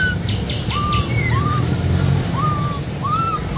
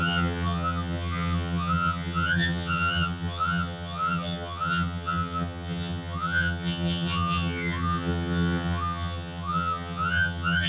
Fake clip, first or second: second